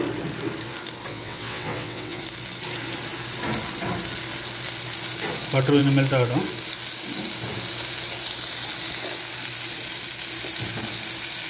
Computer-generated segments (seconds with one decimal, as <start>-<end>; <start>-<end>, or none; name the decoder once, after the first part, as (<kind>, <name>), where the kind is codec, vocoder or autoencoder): 1.1-2.2 (vocoder, WaveNeXt)